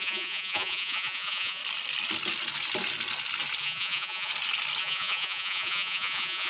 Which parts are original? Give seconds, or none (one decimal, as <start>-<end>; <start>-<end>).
1.6-3.6; 4.3-4.8